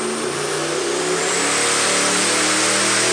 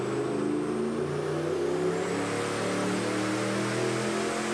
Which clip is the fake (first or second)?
first